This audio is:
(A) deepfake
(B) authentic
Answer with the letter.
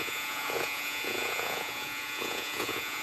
A